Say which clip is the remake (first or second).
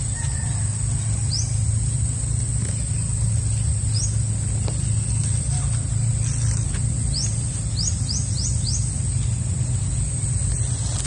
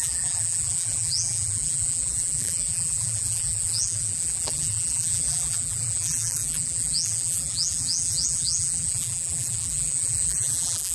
second